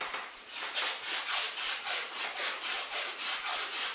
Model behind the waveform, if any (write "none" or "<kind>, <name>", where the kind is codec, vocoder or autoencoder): vocoder, BigVGAN v2